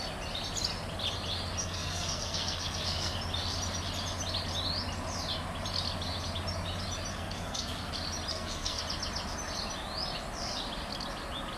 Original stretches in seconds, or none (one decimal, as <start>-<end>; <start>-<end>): 0.0-1.6; 3.2-7.1; 7.9-8.3; 8.8-11.6